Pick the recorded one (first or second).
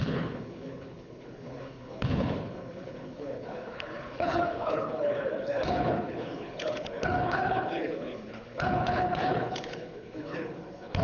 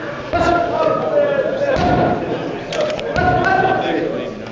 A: second